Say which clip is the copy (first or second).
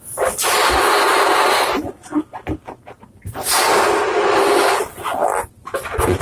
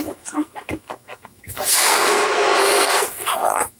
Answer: second